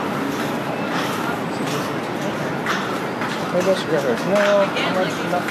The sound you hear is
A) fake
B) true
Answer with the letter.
B